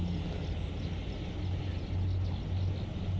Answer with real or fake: real